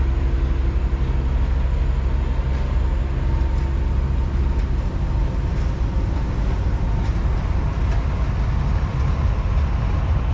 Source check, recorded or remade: recorded